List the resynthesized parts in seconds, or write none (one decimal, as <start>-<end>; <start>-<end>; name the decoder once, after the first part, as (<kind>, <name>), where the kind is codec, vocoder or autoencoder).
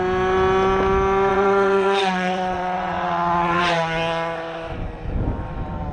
1.3-3.6 (vocoder, WaveNeXt)